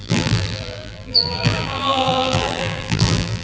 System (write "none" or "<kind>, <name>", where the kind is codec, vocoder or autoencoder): vocoder, BigVGAN v2